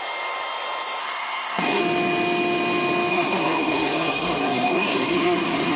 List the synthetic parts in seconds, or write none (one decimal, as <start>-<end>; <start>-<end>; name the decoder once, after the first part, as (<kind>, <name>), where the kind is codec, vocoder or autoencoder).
1.0-1.8 (codec, SNAC); 3.1-5.8